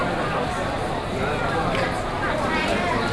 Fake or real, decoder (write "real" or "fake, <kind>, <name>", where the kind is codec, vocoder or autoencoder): real